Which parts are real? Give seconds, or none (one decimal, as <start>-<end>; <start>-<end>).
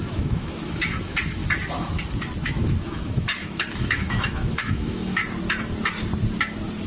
1.4-2.4; 5.2-6.9